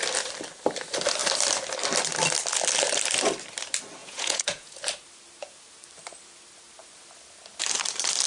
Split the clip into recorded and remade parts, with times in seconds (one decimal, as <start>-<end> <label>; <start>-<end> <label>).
0.0-4.0 recorded; 4.0-4.8 remade; 4.8-8.3 recorded